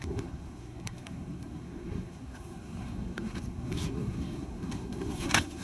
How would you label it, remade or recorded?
remade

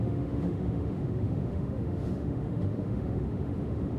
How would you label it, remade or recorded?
remade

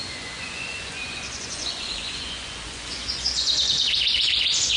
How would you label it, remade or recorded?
remade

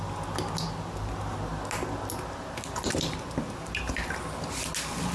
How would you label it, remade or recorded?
recorded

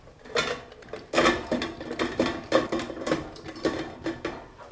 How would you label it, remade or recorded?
recorded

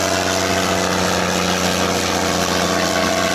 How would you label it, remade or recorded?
recorded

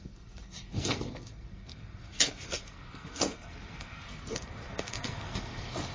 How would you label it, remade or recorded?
remade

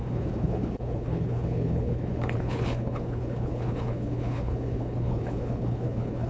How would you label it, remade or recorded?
remade